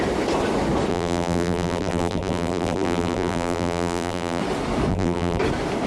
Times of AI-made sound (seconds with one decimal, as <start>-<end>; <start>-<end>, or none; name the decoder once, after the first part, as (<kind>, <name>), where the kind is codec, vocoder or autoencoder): 0.9-4.4 (vocoder, BigVGAN v2); 4.9-5.4